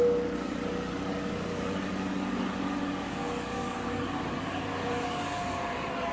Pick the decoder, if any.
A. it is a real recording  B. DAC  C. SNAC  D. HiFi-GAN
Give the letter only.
B